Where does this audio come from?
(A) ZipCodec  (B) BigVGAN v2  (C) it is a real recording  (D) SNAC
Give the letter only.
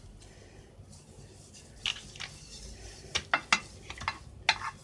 C